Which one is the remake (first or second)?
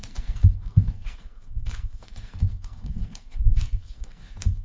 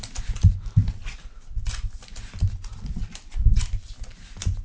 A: first